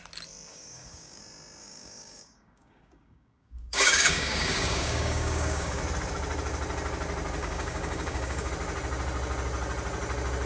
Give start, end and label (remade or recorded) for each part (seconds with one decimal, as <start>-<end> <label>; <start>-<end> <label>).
0.0-0.5 recorded; 0.5-1.2 remade; 1.2-1.6 recorded; 1.6-5.8 remade; 5.8-7.4 recorded; 7.4-8.5 remade; 8.5-10.5 recorded